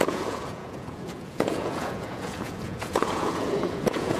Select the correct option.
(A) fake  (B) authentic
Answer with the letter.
A